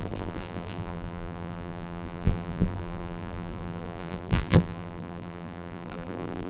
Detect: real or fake fake